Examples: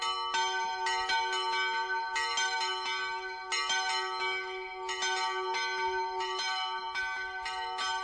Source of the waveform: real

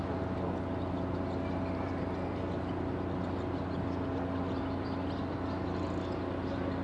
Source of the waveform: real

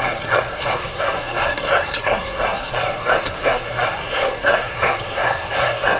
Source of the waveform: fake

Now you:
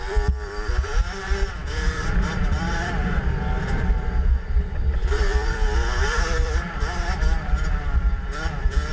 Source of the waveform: fake